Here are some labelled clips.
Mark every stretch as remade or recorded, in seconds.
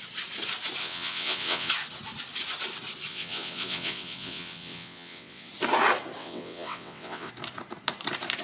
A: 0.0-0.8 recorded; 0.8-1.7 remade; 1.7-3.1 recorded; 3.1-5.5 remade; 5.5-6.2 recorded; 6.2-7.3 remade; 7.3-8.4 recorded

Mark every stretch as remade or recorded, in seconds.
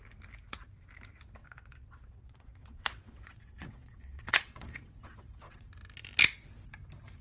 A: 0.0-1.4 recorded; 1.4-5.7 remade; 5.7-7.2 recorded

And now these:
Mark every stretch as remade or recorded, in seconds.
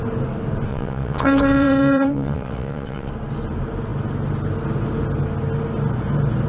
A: 0.0-0.7 recorded; 0.7-3.1 remade; 3.1-6.5 recorded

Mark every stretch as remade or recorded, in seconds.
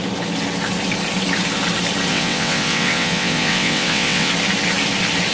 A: 0.0-2.1 recorded; 2.1-4.3 remade; 4.3-5.3 recorded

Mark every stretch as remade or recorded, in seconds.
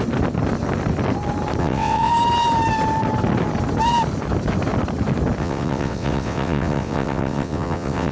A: 0.0-1.6 recorded; 1.6-2.1 remade; 2.1-5.4 recorded; 5.4-8.1 remade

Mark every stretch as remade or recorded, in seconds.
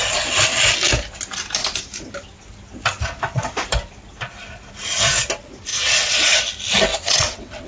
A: 0.0-5.7 recorded; 5.7-6.4 remade; 6.4-6.9 recorded; 6.9-7.7 remade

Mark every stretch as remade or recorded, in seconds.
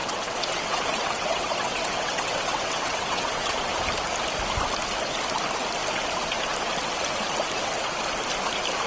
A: 0.0-3.7 remade; 3.7-8.9 recorded